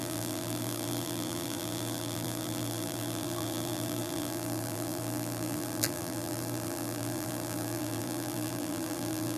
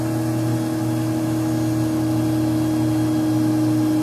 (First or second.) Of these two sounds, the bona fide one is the second